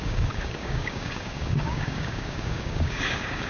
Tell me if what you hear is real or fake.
fake